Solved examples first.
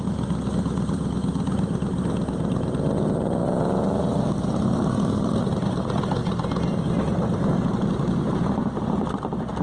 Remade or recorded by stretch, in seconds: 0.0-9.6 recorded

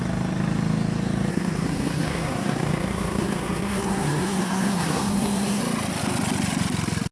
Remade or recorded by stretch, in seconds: 0.0-1.3 recorded; 1.3-5.6 remade; 5.6-7.1 recorded

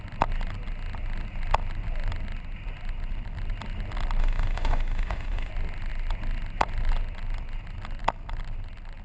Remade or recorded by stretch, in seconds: 0.0-4.2 recorded; 4.2-5.5 remade; 5.5-9.0 recorded

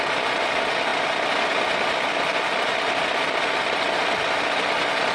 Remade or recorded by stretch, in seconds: 0.0-5.1 recorded